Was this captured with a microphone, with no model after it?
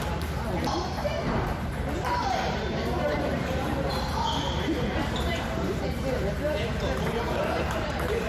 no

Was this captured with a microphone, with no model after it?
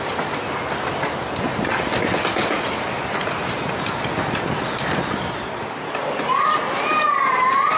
yes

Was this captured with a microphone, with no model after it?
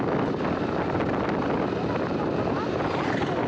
yes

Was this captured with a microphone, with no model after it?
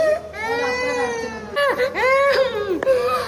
yes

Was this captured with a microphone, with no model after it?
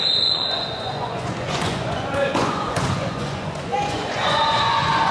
no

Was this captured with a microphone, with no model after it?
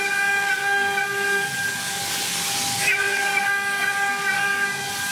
no